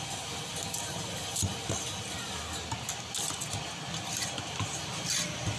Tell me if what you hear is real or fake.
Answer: real